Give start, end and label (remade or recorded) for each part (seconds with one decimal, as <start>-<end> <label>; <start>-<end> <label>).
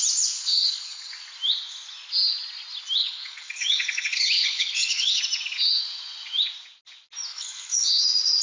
0.0-0.5 recorded; 0.5-1.1 remade; 1.1-3.0 recorded; 3.0-5.2 remade; 5.2-7.3 recorded; 7.3-8.0 remade; 8.0-8.4 recorded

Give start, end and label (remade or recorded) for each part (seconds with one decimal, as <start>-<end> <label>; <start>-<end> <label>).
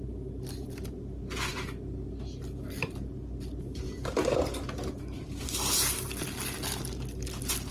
0.0-7.7 recorded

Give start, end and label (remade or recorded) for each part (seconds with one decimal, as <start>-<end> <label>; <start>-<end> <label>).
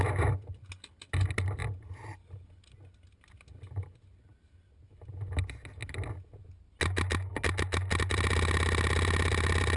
0.0-9.8 recorded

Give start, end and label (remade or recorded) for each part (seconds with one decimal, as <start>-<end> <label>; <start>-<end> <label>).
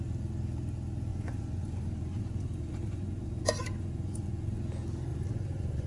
0.0-1.1 recorded; 1.1-4.6 remade; 4.6-5.1 recorded; 5.1-5.9 remade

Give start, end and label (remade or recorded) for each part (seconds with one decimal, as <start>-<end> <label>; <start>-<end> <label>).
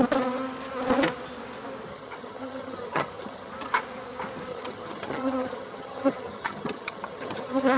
0.0-1.9 recorded; 1.9-3.5 remade; 3.5-4.5 recorded; 4.5-7.8 remade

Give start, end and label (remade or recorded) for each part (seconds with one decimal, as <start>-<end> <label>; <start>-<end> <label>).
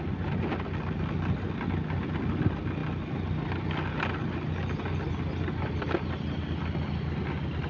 0.0-7.7 recorded